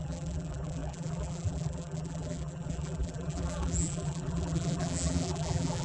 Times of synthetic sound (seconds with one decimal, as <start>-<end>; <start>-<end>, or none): 0.0-5.8